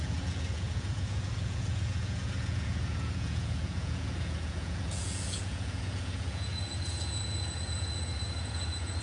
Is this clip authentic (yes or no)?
no